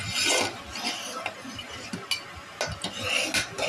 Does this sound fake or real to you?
real